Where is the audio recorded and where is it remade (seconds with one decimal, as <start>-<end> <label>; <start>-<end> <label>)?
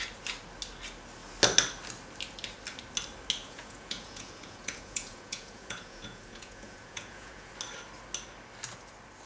0.0-3.4 recorded; 3.4-7.5 remade; 7.5-9.3 recorded